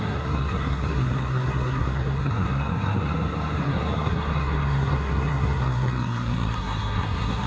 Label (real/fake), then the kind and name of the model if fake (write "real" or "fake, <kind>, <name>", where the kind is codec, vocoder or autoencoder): fake, codec, SNAC